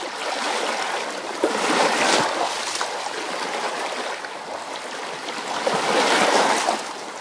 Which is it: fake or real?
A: real